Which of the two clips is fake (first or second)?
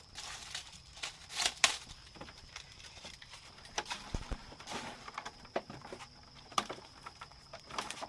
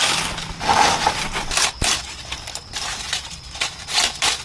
first